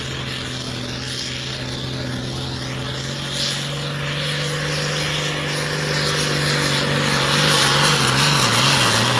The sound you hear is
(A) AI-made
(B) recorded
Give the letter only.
B